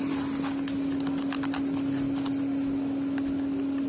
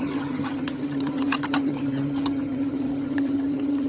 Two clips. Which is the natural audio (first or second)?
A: first